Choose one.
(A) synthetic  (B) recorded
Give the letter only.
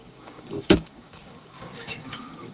A